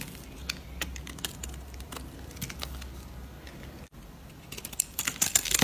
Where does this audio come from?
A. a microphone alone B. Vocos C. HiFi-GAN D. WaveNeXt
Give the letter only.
A